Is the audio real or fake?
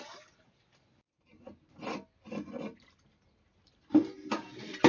real